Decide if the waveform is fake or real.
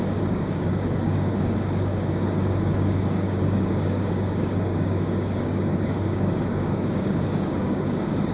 fake